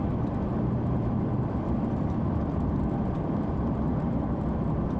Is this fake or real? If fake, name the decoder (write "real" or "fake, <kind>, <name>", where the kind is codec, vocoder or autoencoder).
fake, vocoder, BigVGAN v2